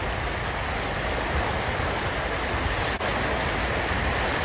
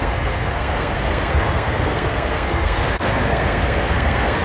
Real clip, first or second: first